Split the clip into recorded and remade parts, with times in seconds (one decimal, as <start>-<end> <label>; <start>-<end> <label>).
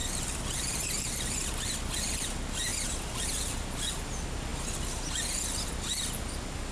0.0-0.8 remade; 0.8-2.7 recorded; 2.7-4.0 remade; 4.0-6.7 recorded